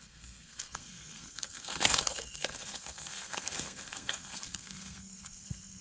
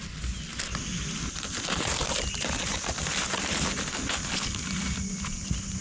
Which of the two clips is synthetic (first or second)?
first